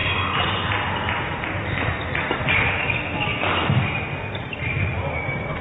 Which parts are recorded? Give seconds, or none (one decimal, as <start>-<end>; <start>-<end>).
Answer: 0.0-5.6